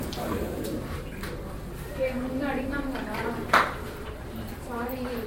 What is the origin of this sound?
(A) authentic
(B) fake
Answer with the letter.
B